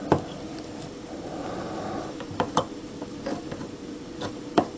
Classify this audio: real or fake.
fake